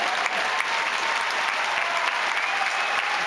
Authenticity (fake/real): real